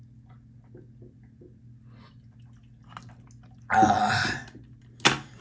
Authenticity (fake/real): real